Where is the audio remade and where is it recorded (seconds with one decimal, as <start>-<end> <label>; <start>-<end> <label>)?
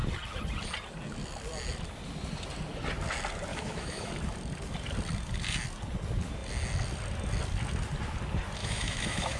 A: 0.0-3.5 recorded; 3.5-4.1 remade; 4.1-8.6 recorded; 8.6-9.4 remade